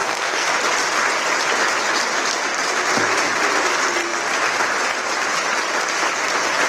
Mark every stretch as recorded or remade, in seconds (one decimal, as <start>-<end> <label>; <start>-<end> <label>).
0.0-0.6 remade; 0.6-6.7 recorded